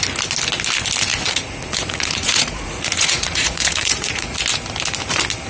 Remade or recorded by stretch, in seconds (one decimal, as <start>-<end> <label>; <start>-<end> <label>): 0.0-1.1 recorded; 1.1-4.4 remade; 4.4-5.5 recorded